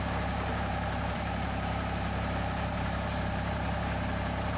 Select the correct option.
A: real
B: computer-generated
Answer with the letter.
B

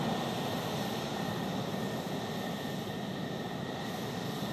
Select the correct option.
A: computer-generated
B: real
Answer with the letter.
B